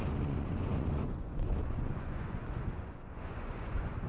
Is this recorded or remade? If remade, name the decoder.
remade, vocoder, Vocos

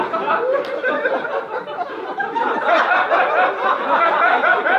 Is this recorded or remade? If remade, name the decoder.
recorded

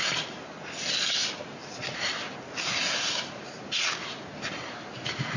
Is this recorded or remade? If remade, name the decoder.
recorded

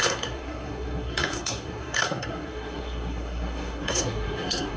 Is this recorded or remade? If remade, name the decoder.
remade, codec, SNAC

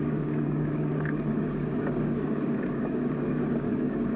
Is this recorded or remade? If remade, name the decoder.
remade, codec, DAC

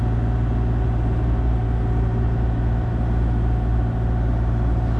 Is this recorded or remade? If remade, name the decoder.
recorded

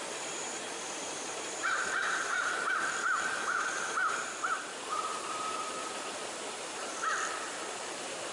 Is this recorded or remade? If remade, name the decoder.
remade, vocoder, BigVGAN v2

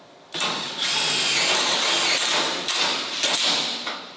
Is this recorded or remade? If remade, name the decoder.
recorded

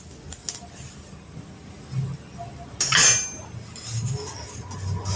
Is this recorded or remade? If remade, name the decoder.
recorded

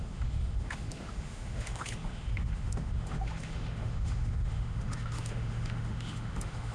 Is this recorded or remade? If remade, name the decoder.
remade, autoencoder, DAC-VAE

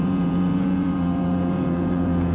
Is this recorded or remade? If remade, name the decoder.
remade, vocoder, Vocos